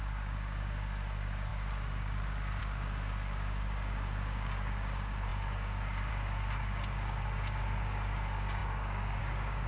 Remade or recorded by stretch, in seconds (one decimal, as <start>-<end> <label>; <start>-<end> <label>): 0.0-9.7 remade